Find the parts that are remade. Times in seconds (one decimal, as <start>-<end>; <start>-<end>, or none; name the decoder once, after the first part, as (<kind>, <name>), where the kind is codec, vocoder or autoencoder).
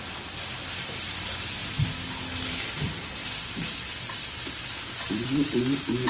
3.2-5.6 (vocoder, BigVGAN v2)